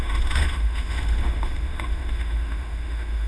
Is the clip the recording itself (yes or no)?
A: no